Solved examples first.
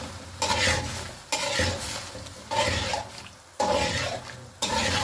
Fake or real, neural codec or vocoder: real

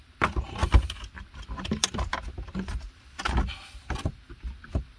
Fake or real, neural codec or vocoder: real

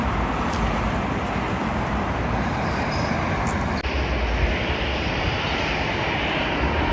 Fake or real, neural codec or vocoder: real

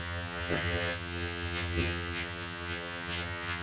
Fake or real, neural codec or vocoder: fake, vocoder, HiFi-GAN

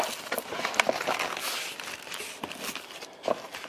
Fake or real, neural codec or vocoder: real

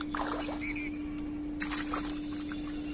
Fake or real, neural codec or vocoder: real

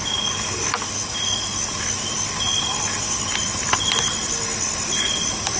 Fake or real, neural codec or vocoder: real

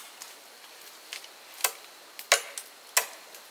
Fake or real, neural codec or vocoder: real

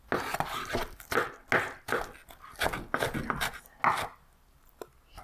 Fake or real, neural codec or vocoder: real